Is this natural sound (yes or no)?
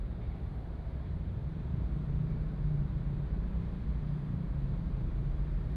no